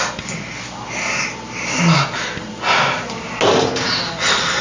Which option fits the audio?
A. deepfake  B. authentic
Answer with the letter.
B